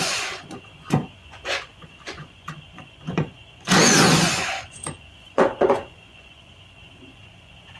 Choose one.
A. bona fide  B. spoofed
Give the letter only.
B